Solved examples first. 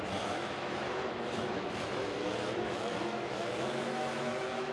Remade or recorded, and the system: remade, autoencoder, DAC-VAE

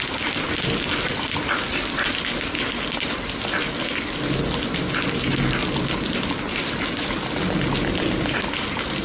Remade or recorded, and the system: recorded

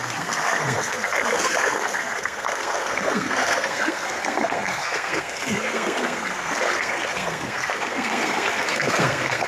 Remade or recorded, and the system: remade, codec, SNAC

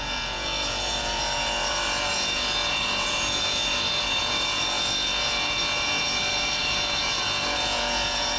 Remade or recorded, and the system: remade, vocoder, Vocos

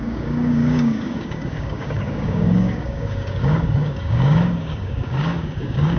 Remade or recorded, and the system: remade, codec, DAC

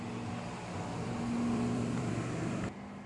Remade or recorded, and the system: remade, vocoder, BigVGAN v2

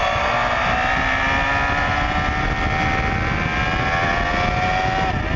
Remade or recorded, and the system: recorded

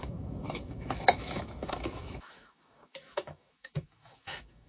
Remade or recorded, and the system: remade, autoencoder, DAC-VAE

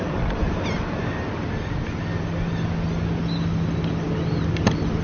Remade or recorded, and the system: recorded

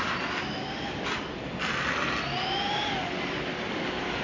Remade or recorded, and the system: recorded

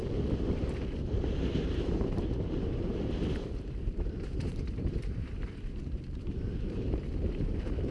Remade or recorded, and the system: remade, vocoder, BigVGAN v2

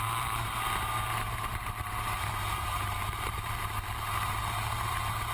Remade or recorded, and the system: remade, vocoder, BigVGAN v2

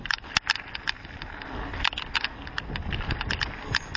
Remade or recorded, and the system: recorded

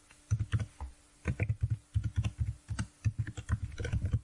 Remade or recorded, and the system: recorded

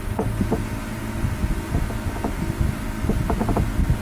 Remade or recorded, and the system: recorded